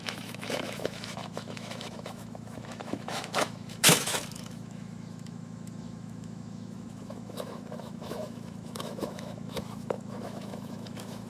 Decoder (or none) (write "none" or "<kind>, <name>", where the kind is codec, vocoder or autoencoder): autoencoder, DAC-VAE